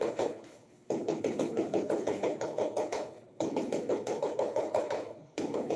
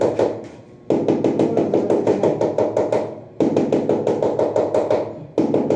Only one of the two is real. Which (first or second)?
second